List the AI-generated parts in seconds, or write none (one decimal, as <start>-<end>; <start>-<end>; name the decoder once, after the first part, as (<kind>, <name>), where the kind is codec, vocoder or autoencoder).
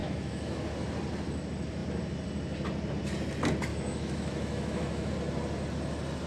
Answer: 0.0-0.7 (autoencoder, DAC-VAE); 3.7-5.1